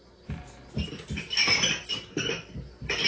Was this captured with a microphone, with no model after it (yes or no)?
yes